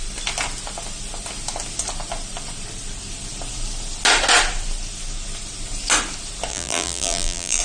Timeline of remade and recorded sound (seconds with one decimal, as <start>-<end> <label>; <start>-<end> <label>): 0.0-6.5 recorded; 6.5-7.6 remade